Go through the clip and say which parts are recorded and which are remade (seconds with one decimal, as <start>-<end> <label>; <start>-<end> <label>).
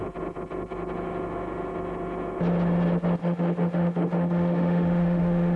0.0-3.2 recorded; 3.2-5.6 remade